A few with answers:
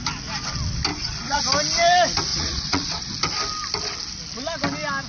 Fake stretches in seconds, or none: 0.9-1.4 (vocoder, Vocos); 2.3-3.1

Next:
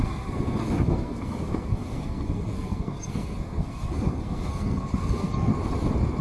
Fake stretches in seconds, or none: 0.0-5.5 (codec, SNAC)

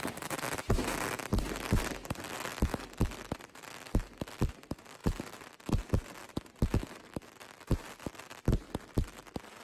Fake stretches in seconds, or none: 1.3-2.1 (vocoder, BigVGAN v2); 2.5-4.5; 5.0-5.5

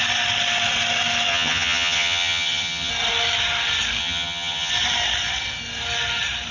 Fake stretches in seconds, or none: 1.3-2.9 (vocoder, HiFi-GAN); 4.0-4.7

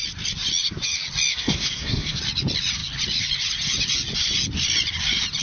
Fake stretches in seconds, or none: 1.3-2.2 (codec, SNAC)